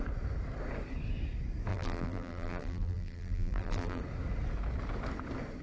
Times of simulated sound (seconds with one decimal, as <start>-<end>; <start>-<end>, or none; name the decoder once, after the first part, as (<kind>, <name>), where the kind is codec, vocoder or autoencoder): 1.7-4.0 (vocoder, BigVGAN v2)

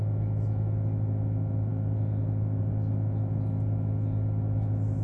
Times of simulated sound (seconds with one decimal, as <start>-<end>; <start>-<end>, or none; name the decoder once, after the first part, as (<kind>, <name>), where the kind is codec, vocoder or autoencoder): none

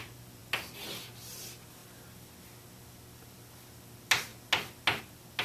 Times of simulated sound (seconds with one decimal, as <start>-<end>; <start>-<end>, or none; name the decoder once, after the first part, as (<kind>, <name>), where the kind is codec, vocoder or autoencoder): none

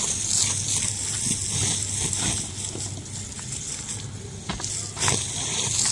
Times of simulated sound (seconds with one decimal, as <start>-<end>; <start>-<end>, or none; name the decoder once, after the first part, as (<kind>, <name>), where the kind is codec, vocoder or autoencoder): none

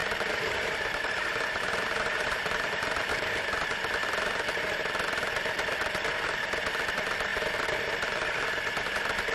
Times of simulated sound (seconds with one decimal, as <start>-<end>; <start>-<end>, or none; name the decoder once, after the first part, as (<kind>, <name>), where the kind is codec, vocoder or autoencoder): 0.0-3.1 (vocoder, BigVGAN v2)

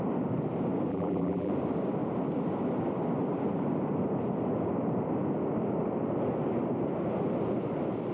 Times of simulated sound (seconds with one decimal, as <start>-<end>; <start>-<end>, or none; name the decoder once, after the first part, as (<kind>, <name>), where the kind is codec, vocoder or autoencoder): 0.9-1.5 (vocoder, BigVGAN v2)

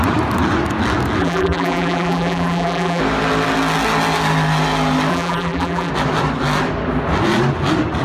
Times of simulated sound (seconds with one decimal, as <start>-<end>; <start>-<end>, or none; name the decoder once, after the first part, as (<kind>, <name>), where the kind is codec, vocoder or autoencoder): 1.2-3.0 (vocoder, BigVGAN v2); 5.1-5.9